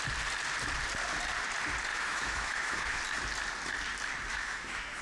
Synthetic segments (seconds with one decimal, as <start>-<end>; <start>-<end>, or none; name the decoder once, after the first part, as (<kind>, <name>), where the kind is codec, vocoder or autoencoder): 1.9-3.0 (autoencoder, DAC-VAE); 4.3-5.0